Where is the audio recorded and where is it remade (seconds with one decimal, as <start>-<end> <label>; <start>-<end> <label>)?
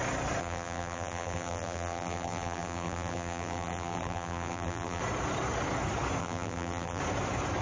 0.0-0.4 recorded; 0.4-5.0 remade; 5.0-6.2 recorded; 6.2-7.0 remade; 7.0-7.6 recorded